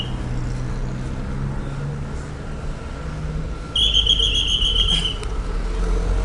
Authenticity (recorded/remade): recorded